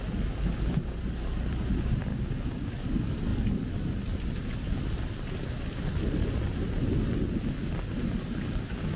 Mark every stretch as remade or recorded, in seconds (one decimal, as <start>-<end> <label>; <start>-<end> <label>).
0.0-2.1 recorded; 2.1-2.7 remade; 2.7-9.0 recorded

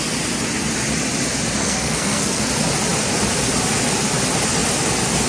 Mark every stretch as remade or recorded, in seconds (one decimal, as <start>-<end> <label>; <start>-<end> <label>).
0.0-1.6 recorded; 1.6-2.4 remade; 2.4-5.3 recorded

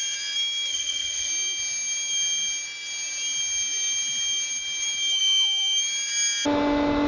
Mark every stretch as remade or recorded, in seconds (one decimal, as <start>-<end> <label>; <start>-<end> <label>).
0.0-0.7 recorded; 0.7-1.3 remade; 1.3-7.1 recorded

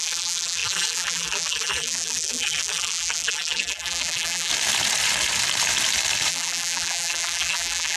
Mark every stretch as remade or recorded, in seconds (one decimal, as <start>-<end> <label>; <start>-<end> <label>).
0.0-4.5 remade; 4.5-6.3 recorded; 6.3-8.0 remade

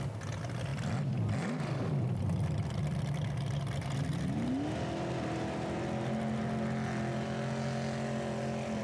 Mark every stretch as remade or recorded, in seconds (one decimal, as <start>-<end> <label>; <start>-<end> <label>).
0.0-0.7 recorded; 0.7-3.6 remade; 3.6-8.8 recorded

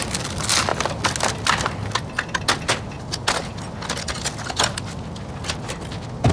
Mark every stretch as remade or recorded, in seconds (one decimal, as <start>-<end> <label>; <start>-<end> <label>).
0.0-6.3 recorded

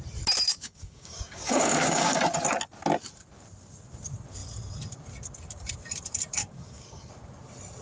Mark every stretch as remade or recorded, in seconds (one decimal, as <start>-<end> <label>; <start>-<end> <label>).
0.0-0.5 recorded; 0.5-2.2 remade; 2.2-6.4 recorded; 6.4-7.1 remade; 7.1-7.8 recorded

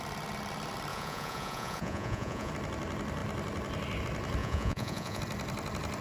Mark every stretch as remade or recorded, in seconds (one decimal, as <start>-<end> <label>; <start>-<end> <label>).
0.0-0.9 recorded; 0.9-2.5 remade; 2.5-4.4 recorded; 4.4-5.2 remade; 5.2-6.0 recorded